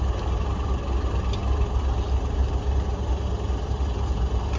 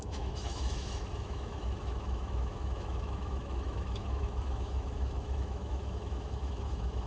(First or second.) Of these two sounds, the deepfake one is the second